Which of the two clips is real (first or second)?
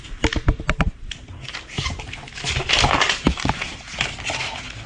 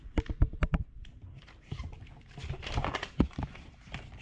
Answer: first